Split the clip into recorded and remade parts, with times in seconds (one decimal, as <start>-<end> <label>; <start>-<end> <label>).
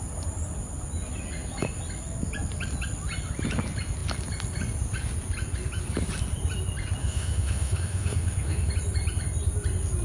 0.0-7.0 recorded; 7.0-8.7 remade; 8.7-10.0 recorded